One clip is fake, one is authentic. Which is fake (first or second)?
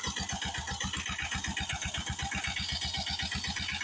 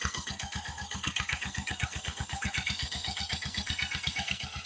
second